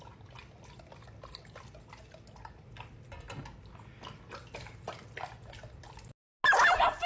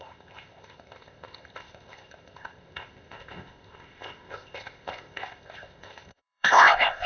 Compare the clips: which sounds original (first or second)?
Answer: first